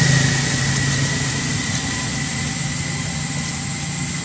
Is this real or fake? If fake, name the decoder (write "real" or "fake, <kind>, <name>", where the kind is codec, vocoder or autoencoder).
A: real